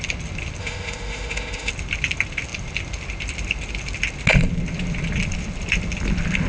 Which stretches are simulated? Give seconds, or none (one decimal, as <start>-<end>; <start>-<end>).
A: 0.6-1.7